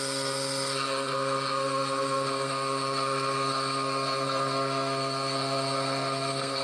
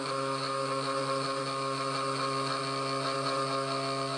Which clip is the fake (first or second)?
first